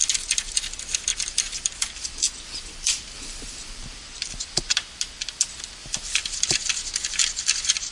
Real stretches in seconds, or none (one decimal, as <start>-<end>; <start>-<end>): 0.0-1.1; 4.7-5.8; 6.7-7.2